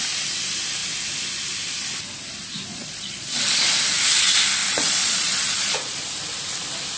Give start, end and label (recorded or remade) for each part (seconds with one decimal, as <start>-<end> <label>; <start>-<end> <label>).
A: 0.0-2.7 recorded; 2.7-3.4 remade; 3.4-4.6 recorded; 4.6-6.1 remade; 6.1-7.0 recorded